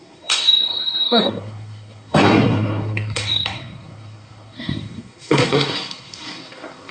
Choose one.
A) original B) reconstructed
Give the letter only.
B